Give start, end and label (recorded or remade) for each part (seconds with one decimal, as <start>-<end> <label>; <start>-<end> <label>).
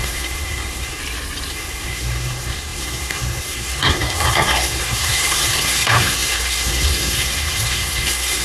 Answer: 0.0-1.0 remade; 1.0-1.5 recorded; 1.5-8.4 remade